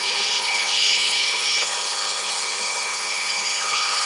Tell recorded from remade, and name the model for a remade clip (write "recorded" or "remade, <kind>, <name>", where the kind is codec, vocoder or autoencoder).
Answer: remade, codec, HILCodec